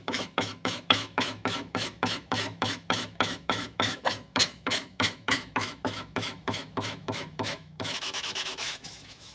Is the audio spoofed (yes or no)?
yes